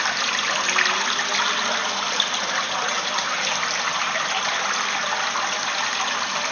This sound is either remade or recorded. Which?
recorded